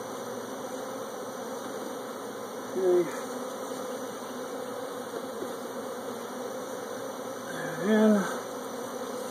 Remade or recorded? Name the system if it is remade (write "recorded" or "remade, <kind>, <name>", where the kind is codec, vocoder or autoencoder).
recorded